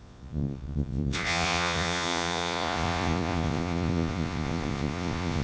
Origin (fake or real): fake